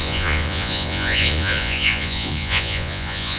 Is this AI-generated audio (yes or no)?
yes